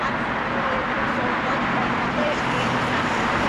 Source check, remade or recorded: recorded